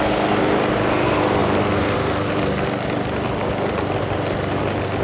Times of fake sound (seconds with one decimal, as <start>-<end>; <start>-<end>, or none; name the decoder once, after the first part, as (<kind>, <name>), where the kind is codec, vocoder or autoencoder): none